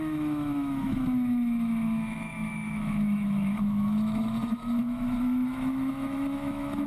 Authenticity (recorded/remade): remade